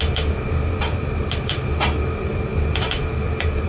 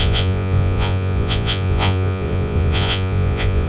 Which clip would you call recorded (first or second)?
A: first